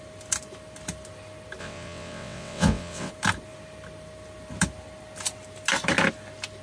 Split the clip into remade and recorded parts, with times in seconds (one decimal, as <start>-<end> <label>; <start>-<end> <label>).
0.0-1.6 recorded; 1.6-3.1 remade; 3.1-6.6 recorded